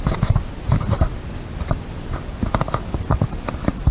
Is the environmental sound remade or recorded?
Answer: recorded